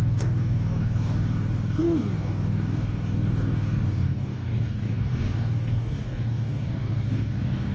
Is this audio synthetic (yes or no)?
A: yes